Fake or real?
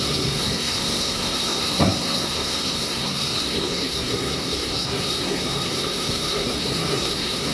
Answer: fake